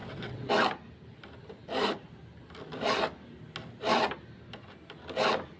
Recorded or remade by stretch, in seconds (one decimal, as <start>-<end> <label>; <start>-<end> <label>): 0.0-0.5 remade; 0.5-5.6 recorded

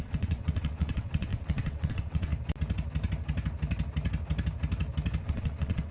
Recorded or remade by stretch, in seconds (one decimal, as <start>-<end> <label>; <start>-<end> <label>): 0.0-2.3 remade; 2.3-5.2 recorded; 5.2-5.9 remade

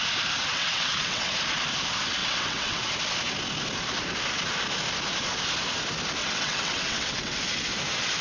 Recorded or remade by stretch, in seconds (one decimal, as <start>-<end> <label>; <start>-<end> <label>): 0.0-0.5 recorded; 0.5-1.3 remade; 1.3-2.2 recorded; 2.2-2.8 remade; 2.8-6.2 recorded; 6.2-7.4 remade; 7.4-8.2 recorded

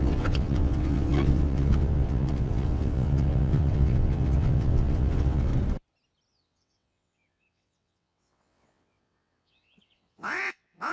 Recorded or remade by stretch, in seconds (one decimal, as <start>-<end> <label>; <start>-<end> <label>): 0.0-5.5 remade; 5.5-6.3 recorded; 6.3-10.9 remade

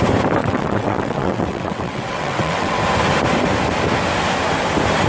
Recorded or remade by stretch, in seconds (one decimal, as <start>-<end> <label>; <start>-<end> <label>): 0.0-0.4 recorded; 0.4-2.8 remade; 2.8-5.1 recorded